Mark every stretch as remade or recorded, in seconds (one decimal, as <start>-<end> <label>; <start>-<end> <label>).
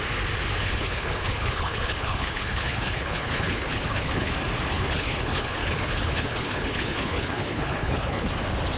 0.0-0.6 recorded; 0.6-4.3 remade; 4.3-4.7 recorded; 4.7-8.3 remade; 8.3-8.8 recorded